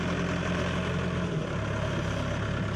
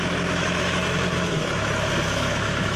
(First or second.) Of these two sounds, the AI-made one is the second